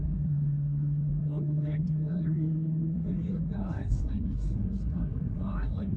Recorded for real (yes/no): no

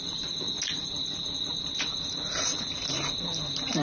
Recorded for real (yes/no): yes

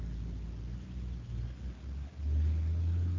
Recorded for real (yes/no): yes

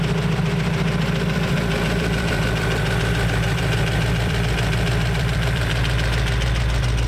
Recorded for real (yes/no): no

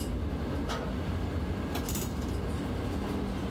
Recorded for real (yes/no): yes